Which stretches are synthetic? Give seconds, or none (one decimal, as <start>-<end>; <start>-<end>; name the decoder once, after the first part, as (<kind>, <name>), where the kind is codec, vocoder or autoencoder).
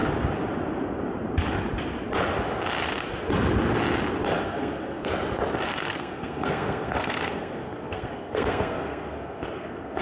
4.4-5.1 (codec, SNAC); 5.7-10.0